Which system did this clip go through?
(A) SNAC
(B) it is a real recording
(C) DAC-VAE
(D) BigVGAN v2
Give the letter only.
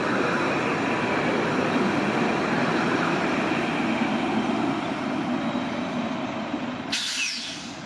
B